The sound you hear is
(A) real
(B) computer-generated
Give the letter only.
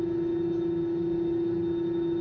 A